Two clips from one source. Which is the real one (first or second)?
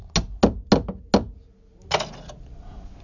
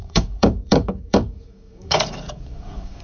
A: first